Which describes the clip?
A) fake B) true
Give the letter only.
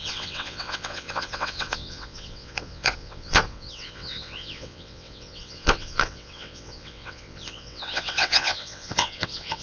A